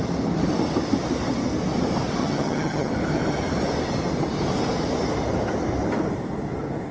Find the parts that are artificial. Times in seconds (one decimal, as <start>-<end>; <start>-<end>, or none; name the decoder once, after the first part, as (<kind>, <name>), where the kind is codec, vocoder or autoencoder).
2.2-2.9 (vocoder, HiFi-GAN)